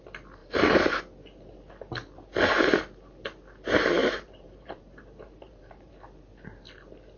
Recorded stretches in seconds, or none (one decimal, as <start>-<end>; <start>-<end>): 0.0-0.4; 1.0-4.0; 5.9-7.2

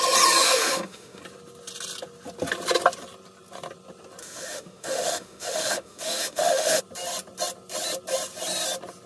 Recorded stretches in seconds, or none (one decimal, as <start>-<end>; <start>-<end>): 0.0-0.4; 1.2-4.2; 6.8-9.1